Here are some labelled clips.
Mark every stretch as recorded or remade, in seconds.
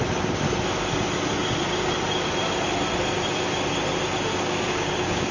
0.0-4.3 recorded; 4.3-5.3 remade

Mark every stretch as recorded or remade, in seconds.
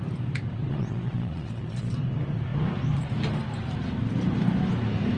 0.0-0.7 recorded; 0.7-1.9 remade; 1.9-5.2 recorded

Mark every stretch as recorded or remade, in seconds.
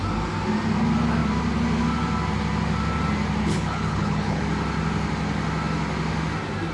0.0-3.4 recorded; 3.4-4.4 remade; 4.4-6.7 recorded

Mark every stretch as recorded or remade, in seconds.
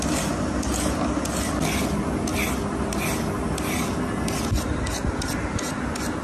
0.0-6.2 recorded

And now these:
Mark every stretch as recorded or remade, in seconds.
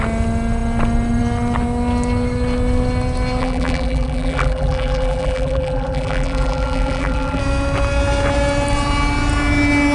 0.0-3.4 recorded; 3.4-7.4 remade; 7.4-9.9 recorded